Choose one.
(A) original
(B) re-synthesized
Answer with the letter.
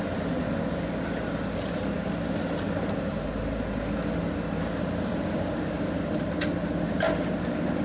A